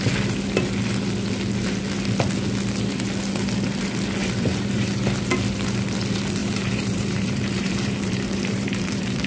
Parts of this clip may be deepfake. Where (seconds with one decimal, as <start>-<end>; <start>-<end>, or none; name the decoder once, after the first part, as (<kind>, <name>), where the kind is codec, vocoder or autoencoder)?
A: 4.2-4.9 (vocoder, BigVGAN v2); 6.4-9.3